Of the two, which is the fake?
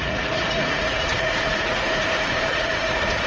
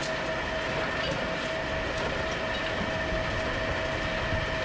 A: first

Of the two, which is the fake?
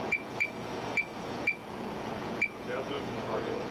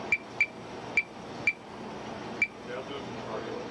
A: first